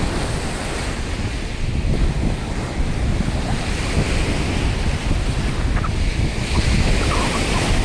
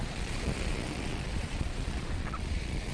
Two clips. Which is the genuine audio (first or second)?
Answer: first